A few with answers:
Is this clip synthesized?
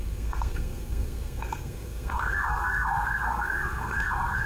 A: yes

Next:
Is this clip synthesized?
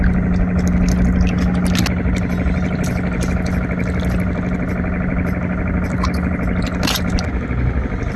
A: no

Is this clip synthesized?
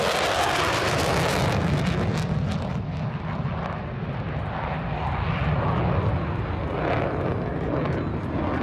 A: no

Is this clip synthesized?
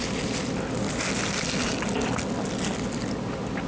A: no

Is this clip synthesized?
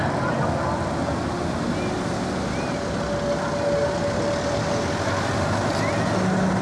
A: no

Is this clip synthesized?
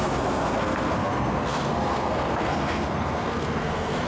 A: yes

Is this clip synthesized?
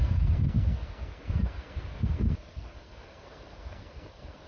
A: yes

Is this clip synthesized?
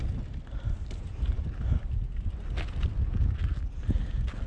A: no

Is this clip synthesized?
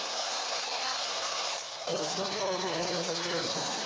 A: yes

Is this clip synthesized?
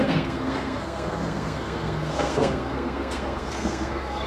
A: yes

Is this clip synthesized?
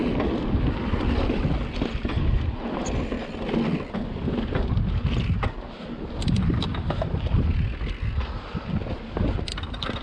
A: no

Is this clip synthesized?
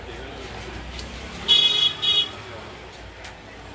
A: no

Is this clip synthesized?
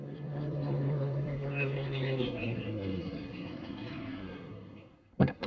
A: yes